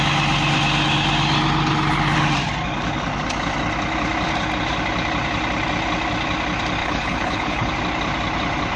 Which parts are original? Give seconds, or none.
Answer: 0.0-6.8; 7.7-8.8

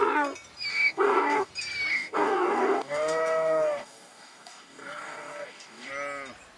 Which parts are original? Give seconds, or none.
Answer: 0.0-0.7; 1.5-1.9; 5.9-6.6

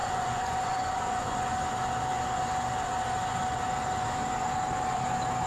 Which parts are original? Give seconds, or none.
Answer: 1.5-5.5

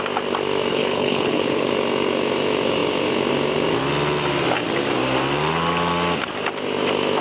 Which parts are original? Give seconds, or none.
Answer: 0.0-0.7; 1.7-7.2